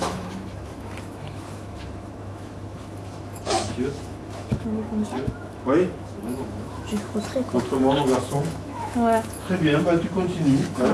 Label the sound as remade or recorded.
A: remade